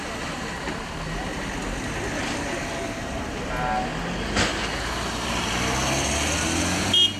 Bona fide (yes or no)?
yes